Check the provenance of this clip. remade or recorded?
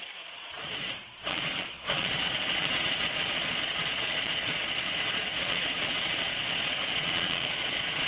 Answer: remade